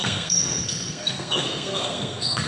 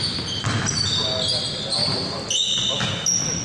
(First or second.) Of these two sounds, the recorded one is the second